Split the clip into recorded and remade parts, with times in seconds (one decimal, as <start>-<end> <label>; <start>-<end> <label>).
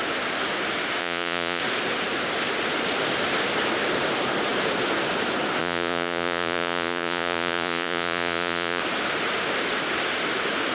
0.0-1.0 recorded; 1.0-1.6 remade; 1.6-5.6 recorded; 5.6-8.8 remade; 8.8-10.7 recorded